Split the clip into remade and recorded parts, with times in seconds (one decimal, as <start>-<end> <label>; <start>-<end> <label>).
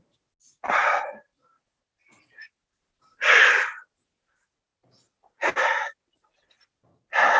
0.0-7.4 recorded